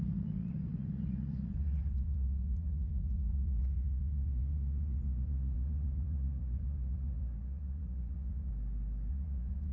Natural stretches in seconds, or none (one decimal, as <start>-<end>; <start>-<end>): 8.5-9.1